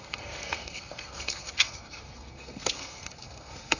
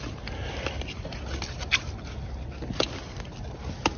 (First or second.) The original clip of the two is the second